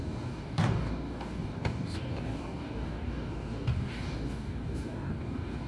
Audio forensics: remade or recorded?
remade